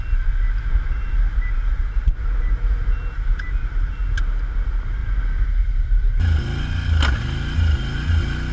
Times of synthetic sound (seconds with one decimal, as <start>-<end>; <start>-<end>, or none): none